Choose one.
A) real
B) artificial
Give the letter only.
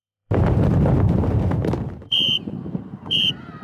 B